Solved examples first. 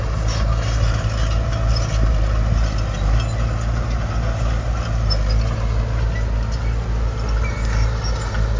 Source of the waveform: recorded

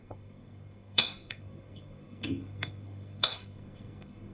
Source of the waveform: remade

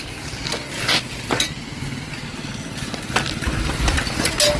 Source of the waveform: recorded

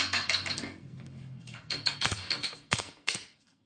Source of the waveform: remade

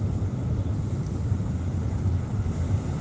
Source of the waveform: recorded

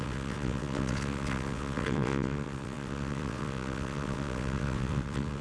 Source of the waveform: remade